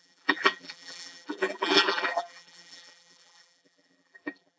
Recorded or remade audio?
remade